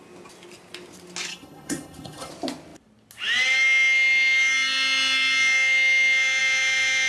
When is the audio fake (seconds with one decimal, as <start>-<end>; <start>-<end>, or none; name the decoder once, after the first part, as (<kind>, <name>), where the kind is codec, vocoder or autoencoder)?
1.3-2.3 (codec, HILCodec)